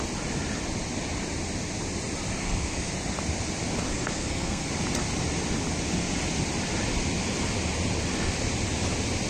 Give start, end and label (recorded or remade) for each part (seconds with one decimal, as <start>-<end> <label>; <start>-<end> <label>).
0.0-2.4 recorded; 2.4-2.9 remade; 2.9-3.9 recorded; 3.9-4.7 remade; 4.7-9.3 recorded